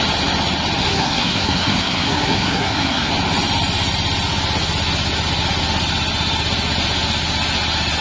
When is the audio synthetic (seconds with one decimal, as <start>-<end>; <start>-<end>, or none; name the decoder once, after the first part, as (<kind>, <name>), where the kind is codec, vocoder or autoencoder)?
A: 0.8-3.1 (codec, SNAC)